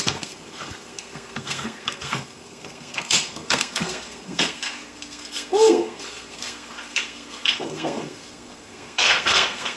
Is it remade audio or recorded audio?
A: remade